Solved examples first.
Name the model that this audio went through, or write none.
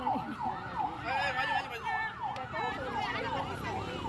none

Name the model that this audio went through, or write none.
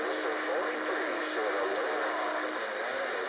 none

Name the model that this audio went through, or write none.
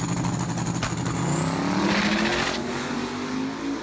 none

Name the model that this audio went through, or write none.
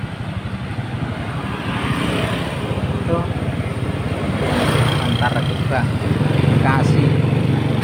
none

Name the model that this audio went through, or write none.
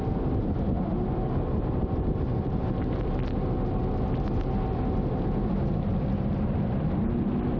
none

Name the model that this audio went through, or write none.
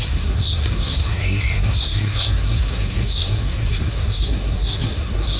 codec, SNAC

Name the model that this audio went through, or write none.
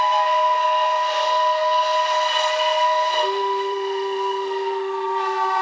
codec, SNAC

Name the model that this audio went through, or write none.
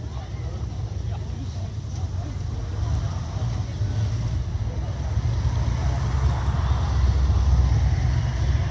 none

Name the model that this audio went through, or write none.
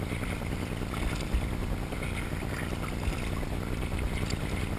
none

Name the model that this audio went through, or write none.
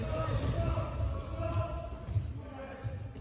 none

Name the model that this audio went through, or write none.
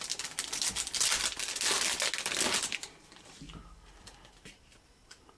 none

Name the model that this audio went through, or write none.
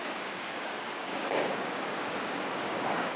codec, DAC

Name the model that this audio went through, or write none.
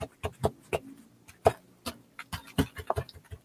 none